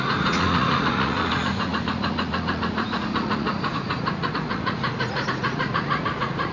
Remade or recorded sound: remade